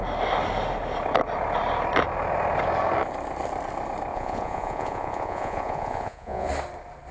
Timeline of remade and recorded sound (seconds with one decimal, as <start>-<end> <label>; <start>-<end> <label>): 0.0-4.1 recorded; 4.1-6.5 remade; 6.5-7.1 recorded